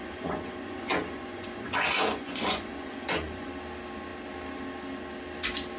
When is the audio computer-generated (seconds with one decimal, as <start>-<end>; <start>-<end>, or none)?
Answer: 0.0-3.5